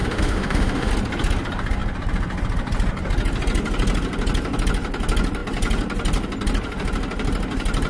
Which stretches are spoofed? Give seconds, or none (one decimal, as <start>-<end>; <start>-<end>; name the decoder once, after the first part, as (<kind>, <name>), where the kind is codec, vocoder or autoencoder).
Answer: 0.0-0.9 (autoencoder, DAC-VAE)

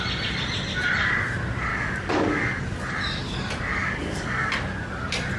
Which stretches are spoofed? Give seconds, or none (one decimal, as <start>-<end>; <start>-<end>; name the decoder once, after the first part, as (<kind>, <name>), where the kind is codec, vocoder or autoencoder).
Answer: 1.7-2.6 (codec, DAC); 3.7-4.5

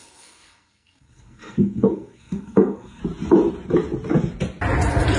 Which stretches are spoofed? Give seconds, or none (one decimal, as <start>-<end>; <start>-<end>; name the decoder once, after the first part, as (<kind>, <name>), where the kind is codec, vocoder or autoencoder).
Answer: 0.0-3.0 (codec, SNAC)

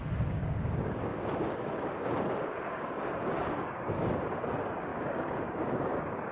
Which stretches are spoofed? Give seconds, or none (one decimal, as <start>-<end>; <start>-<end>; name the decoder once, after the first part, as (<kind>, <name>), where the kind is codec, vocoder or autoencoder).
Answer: 0.0-6.3 (codec, DAC)

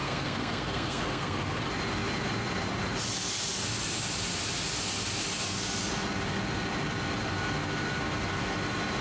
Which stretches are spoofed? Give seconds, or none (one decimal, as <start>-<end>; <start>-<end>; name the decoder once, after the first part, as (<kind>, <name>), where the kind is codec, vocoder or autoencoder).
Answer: 0.0-1.6 (codec, SNAC)